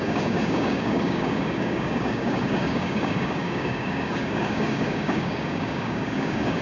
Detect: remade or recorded remade